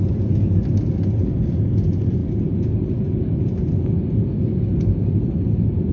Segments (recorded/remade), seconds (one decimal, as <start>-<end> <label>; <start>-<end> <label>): 0.0-5.9 recorded